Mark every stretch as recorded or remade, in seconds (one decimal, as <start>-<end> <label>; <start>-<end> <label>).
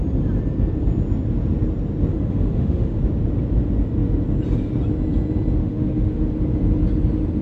0.0-2.1 recorded; 2.1-3.0 remade; 3.0-5.6 recorded; 5.6-6.3 remade; 6.3-7.4 recorded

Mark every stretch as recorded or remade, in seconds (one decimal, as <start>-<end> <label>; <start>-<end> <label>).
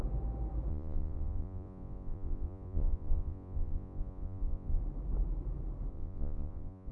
0.0-0.7 recorded; 0.7-4.8 remade; 4.8-5.9 recorded; 5.9-6.9 remade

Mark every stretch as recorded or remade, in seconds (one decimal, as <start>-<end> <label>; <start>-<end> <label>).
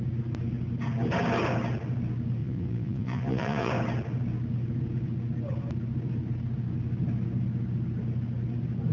0.0-2.4 recorded; 2.4-3.7 remade; 3.7-8.9 recorded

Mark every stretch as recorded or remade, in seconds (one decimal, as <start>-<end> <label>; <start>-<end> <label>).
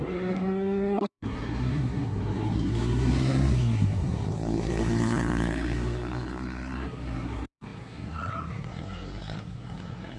0.0-10.2 remade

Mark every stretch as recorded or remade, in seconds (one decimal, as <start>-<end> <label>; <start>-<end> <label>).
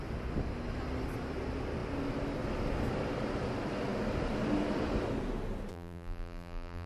0.0-5.7 recorded; 5.7-6.9 remade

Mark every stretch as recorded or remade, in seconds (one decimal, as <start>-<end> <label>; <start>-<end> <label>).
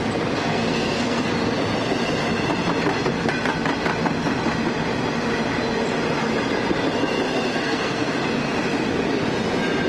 0.0-0.4 recorded; 0.4-1.3 remade; 1.3-7.5 recorded; 7.5-8.2 remade; 8.2-9.9 recorded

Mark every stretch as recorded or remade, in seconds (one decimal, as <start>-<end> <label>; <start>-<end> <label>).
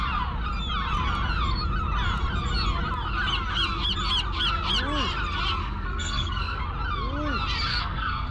0.0-5.6 recorded; 5.6-6.6 remade; 6.6-7.7 recorded; 7.7-8.3 remade